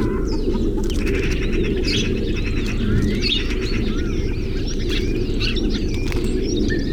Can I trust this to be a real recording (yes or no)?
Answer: yes